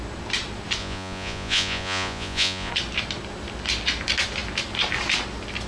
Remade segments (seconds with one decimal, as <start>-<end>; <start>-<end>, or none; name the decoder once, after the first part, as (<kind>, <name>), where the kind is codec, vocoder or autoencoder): 0.8-2.7 (vocoder, Vocos)

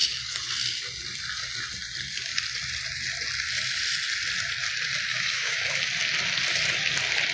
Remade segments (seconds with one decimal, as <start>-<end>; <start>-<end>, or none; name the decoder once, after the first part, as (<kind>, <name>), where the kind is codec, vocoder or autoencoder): 0.0-0.5 (autoencoder, DAC-VAE); 5.1-5.8

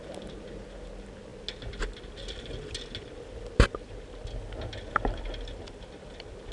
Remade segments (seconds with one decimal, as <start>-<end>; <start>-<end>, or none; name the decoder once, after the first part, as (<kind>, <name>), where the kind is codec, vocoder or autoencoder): none

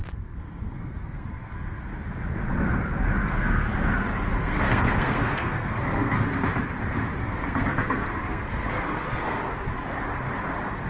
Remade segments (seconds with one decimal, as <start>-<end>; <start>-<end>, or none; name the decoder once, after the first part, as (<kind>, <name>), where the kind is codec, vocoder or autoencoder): 0.0-1.8 (codec, SNAC); 3.2-3.7; 4.3-6.2; 7.2-9.4

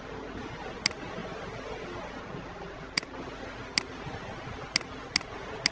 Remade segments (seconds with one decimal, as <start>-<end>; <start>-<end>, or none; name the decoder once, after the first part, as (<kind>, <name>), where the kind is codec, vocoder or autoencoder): none